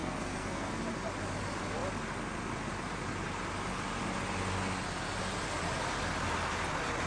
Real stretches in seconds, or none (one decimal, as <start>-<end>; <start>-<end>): 0.7-7.1